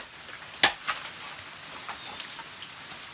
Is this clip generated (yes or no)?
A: no